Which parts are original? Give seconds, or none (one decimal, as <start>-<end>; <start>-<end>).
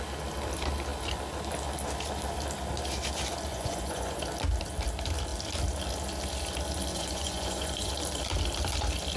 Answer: 0.0-3.5; 4.2-6.9; 7.9-9.2